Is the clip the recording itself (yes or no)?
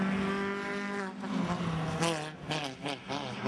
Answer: yes